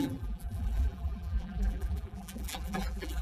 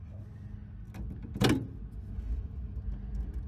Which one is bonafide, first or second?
second